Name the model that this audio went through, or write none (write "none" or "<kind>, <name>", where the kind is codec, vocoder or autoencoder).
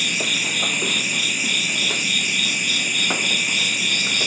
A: none